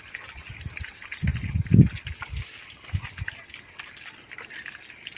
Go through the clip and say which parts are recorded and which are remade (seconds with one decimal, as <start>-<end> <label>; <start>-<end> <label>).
0.0-5.2 recorded